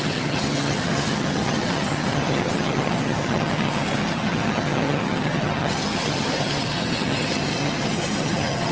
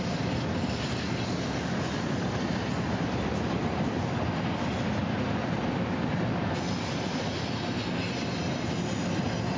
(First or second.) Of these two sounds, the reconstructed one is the first